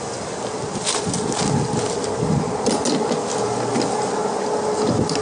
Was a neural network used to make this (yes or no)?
no